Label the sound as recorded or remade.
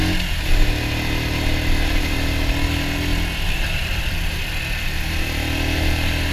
recorded